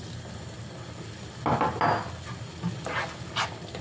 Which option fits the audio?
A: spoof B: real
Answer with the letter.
B